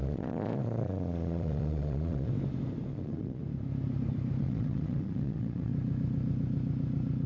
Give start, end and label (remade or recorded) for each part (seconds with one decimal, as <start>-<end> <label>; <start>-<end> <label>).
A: 0.0-2.3 remade; 2.3-2.9 recorded; 2.9-3.4 remade; 3.4-4.4 recorded; 4.4-5.7 remade; 5.7-7.3 recorded